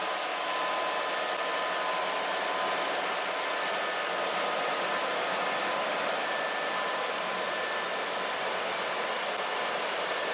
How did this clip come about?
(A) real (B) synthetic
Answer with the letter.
A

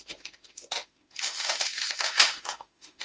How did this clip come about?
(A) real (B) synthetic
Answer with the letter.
B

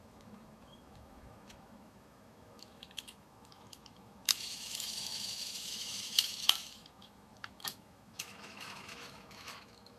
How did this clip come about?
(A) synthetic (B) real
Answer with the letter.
A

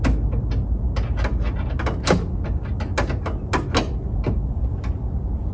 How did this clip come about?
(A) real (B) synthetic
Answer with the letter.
A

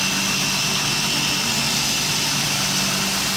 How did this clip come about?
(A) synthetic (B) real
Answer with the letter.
B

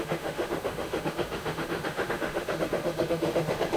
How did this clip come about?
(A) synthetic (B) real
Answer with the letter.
A